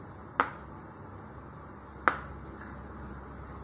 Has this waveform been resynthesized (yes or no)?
no